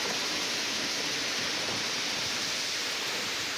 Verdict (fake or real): real